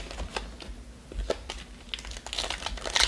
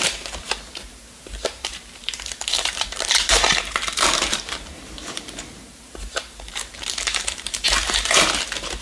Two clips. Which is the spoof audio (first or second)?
second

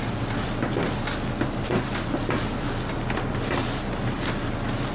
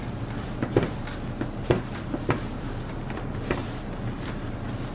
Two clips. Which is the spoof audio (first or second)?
second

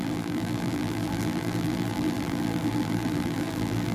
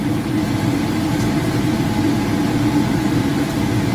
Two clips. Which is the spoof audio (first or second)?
first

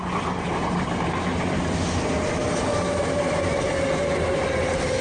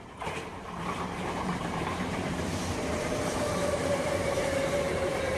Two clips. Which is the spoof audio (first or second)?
second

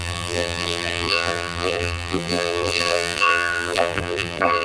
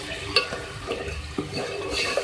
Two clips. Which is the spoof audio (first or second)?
first